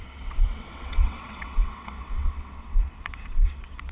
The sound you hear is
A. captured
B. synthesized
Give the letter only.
B